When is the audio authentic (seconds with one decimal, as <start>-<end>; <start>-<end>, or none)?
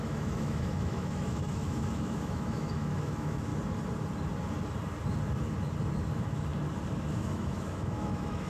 3.5-6.1; 6.5-7.1